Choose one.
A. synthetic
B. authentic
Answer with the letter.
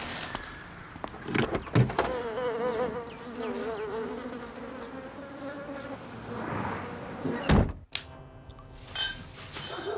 B